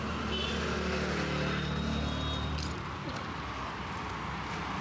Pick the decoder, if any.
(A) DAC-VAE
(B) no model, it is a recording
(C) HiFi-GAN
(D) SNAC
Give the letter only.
B